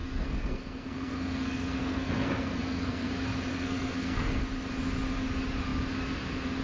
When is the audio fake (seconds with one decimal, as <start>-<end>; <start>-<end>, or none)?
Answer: 0.0-3.1; 3.5-4.4

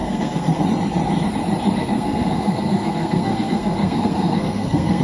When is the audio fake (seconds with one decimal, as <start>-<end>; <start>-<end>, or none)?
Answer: 0.0-0.6; 1.8-5.0

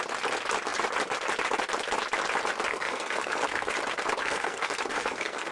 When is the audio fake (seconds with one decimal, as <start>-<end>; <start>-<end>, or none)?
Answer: 2.7-3.7; 4.2-5.5

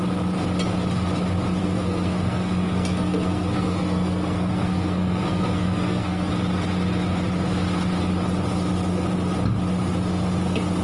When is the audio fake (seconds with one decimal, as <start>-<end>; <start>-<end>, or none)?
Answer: 1.6-6.3

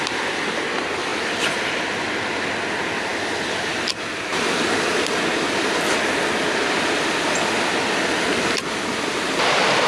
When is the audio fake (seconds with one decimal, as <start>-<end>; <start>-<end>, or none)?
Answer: none